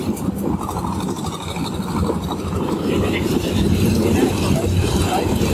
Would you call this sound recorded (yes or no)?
yes